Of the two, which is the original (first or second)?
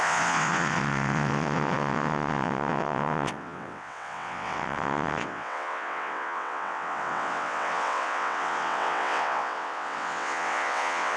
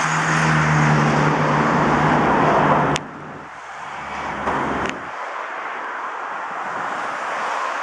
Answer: second